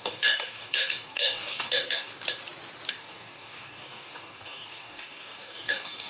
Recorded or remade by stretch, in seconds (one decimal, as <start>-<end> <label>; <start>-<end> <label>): 0.0-2.1 remade; 2.1-2.9 recorded; 2.9-6.1 remade